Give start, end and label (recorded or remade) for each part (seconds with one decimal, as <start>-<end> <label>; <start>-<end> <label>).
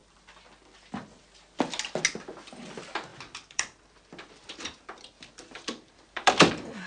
0.0-3.1 recorded; 3.1-6.5 remade; 6.5-6.9 recorded